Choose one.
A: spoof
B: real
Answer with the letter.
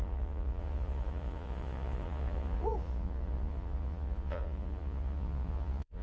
A